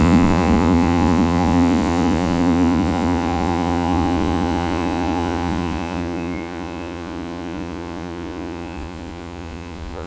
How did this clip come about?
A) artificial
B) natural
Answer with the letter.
A